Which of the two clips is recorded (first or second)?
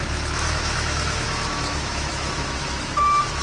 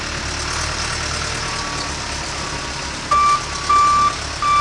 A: second